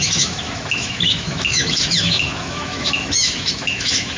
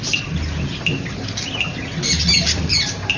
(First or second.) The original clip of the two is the second